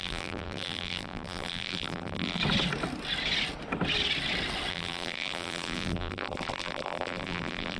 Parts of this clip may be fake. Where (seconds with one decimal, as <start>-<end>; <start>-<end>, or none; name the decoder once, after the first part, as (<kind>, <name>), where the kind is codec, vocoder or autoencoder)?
0.0-2.4 (vocoder, BigVGAN v2); 4.7-7.8